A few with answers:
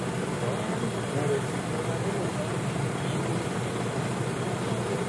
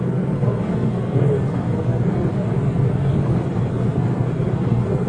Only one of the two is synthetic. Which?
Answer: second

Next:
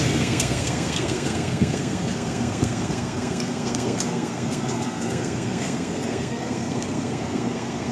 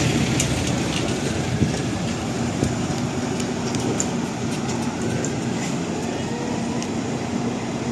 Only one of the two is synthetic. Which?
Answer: first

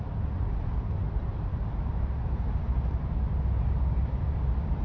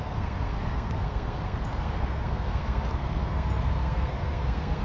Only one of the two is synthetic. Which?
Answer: second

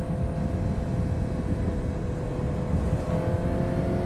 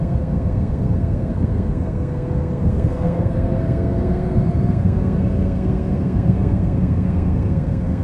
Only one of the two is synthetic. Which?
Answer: second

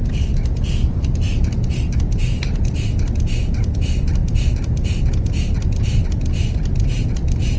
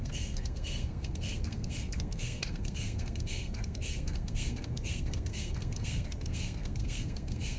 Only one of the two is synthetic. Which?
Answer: second